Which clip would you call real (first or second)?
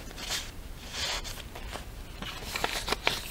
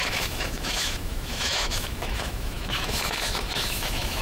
first